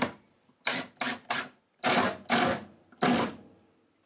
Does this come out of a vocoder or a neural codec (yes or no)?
no